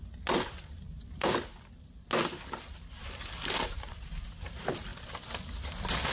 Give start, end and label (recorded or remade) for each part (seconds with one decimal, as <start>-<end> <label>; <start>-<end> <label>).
0.0-6.1 recorded